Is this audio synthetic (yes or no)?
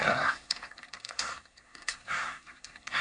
yes